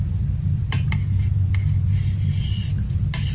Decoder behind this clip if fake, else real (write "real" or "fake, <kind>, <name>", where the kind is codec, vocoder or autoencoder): real